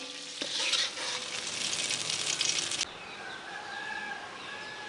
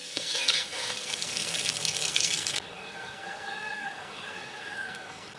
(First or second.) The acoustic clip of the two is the first